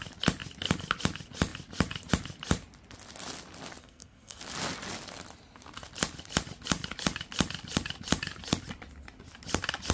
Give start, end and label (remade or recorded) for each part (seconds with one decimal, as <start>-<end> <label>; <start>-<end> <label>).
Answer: 0.0-3.8 recorded; 3.8-4.4 remade; 4.4-9.9 recorded